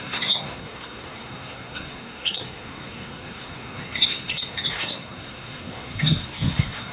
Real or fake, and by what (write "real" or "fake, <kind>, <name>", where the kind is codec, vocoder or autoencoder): fake, codec, SNAC